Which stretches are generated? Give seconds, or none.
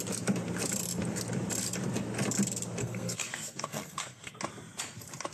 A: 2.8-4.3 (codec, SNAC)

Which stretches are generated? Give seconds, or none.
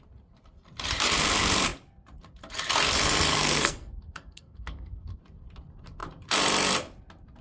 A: 3.3-5.2 (codec, SNAC)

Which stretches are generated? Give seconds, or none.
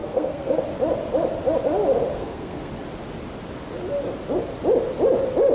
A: 0.0-0.6 (codec, SNAC); 2.1-2.7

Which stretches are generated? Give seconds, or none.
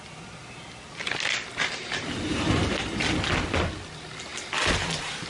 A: none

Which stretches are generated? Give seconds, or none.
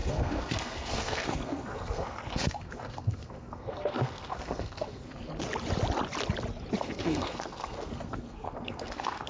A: 0.0-5.3 (codec, SNAC); 6.8-9.3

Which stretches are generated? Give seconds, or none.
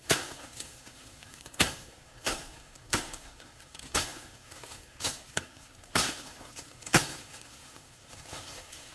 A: 0.0-8.9 (codec, SNAC)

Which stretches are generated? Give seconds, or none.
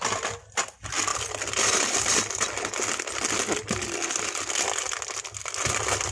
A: none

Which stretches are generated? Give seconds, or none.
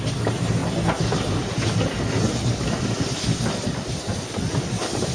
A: none